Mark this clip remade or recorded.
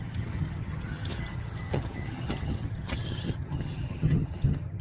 remade